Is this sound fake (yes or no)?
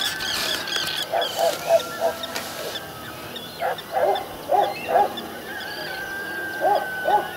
no